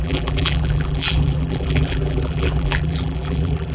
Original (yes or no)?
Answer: no